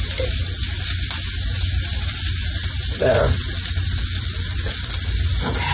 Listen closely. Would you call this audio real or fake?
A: real